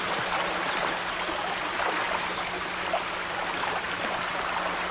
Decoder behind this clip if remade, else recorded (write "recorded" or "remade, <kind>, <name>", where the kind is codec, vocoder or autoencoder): recorded